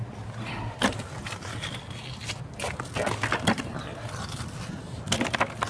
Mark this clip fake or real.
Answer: real